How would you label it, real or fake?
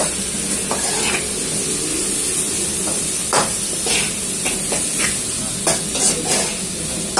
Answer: real